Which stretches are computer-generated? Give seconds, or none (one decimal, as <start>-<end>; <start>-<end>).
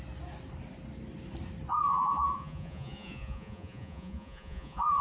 1.7-5.0